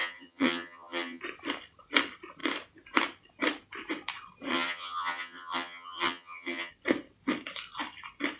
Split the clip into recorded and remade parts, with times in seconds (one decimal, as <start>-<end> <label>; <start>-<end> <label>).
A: 0.0-1.2 remade; 1.2-4.5 recorded; 4.5-6.7 remade; 6.7-8.4 recorded